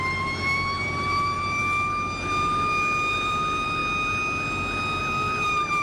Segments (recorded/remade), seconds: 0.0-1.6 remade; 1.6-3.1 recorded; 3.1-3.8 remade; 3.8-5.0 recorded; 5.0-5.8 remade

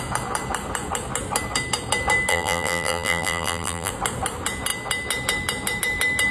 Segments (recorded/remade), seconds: 0.0-2.3 recorded; 2.3-3.9 remade; 3.9-6.3 recorded

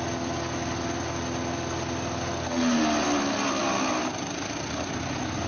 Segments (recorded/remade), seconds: 0.0-3.6 recorded; 3.6-5.5 remade

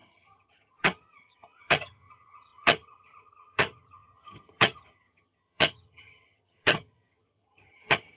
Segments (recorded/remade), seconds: 0.0-8.2 remade

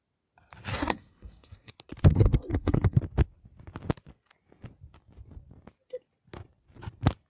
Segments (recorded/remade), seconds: 0.0-0.7 recorded; 0.7-1.7 remade; 1.7-2.1 recorded; 2.1-3.0 remade; 3.0-7.3 recorded